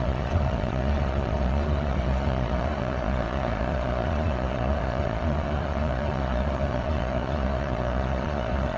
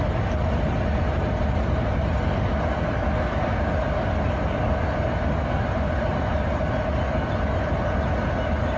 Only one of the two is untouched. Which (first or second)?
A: second